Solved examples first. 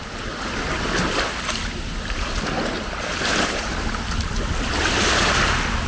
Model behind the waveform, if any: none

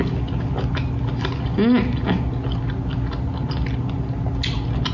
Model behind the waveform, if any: none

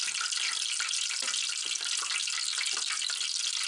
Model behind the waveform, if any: none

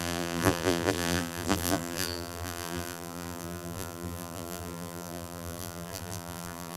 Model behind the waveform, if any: vocoder, BigVGAN v2